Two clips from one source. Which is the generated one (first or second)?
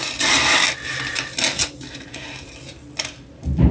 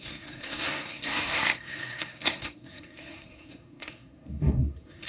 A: second